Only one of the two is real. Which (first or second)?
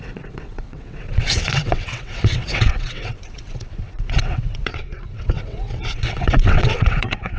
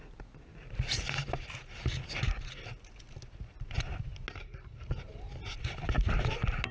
second